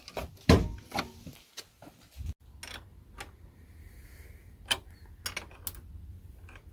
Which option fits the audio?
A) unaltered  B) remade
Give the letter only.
A